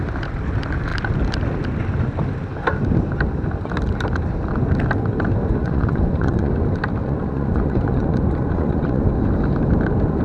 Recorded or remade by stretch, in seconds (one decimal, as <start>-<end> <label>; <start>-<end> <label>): 0.0-5.6 recorded; 5.6-6.5 remade; 6.5-7.0 recorded; 7.0-9.1 remade; 9.1-10.2 recorded